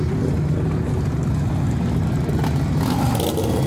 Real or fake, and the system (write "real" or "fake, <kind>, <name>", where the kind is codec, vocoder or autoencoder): real